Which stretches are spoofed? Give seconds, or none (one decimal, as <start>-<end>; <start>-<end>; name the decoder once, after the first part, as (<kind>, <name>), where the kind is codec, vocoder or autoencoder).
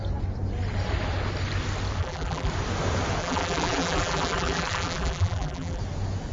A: 2.0-2.5 (vocoder, BigVGAN v2); 3.2-5.8